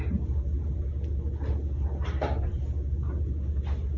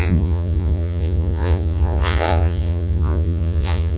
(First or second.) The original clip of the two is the first